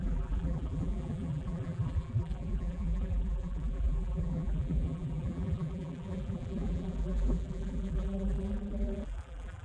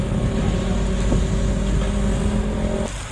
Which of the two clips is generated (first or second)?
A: first